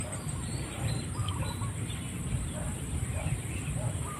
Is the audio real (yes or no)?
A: no